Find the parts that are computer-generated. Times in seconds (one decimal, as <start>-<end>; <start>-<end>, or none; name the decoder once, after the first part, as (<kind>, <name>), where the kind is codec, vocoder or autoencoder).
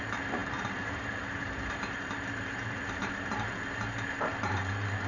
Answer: 0.4-3.5 (vocoder, BigVGAN v2); 4.3-5.1